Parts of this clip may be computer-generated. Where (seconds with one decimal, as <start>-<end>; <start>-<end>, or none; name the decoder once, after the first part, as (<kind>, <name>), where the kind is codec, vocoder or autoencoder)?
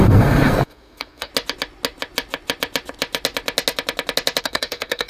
0.0-1.3 (codec, SNAC); 4.4-5.1